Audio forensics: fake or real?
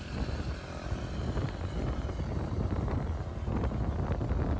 real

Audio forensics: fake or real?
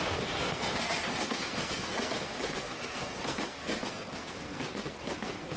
fake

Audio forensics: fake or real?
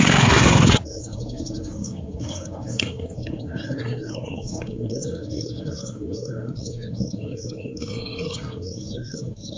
fake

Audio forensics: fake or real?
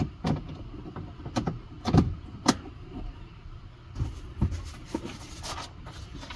real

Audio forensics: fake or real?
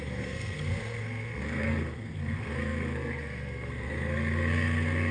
fake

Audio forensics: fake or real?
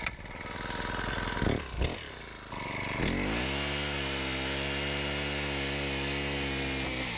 real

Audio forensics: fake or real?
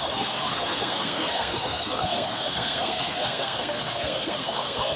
fake